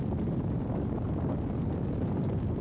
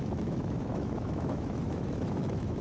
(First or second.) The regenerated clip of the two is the second